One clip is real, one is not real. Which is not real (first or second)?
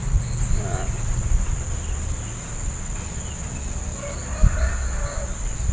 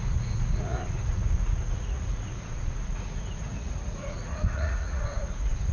second